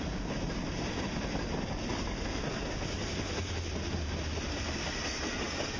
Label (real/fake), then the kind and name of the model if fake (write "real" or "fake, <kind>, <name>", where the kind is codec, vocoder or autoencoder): real